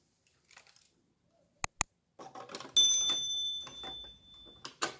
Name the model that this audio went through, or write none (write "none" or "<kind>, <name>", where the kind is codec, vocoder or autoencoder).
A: none